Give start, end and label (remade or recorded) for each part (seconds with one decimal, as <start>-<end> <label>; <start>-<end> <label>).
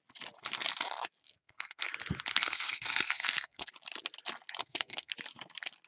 0.0-1.2 recorded; 1.2-1.8 remade; 1.8-2.3 recorded; 2.3-3.7 remade; 3.7-4.6 recorded; 4.6-5.1 remade; 5.1-5.9 recorded